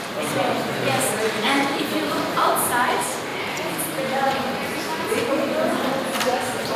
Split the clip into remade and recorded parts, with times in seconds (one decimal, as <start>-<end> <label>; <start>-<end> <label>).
0.0-3.3 recorded; 3.3-4.8 remade; 4.8-6.8 recorded